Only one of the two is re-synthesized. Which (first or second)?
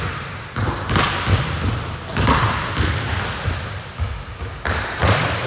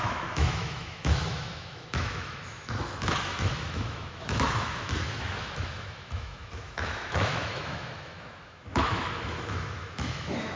second